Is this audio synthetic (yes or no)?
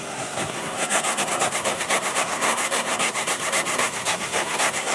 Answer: yes